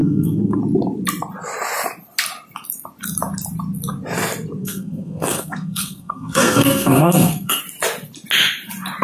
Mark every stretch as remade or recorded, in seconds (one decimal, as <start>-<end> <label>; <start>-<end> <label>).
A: 0.0-0.6 remade; 0.6-4.6 recorded; 4.6-7.6 remade; 7.6-9.0 recorded